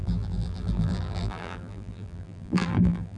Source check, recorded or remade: remade